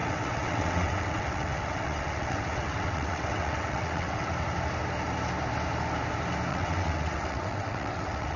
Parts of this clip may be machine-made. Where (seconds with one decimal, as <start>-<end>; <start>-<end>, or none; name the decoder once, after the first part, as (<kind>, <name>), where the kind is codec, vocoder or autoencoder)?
0.0-4.3 (vocoder, WaveNeXt); 6.5-8.4